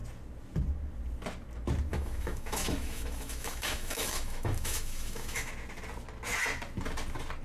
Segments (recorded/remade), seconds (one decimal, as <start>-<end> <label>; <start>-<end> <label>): 0.0-1.9 recorded; 1.9-5.5 remade; 5.5-7.4 recorded